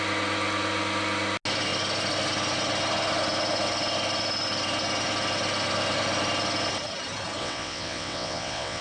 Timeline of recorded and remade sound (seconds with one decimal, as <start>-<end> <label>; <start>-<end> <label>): 0.0-7.4 recorded; 7.4-8.8 remade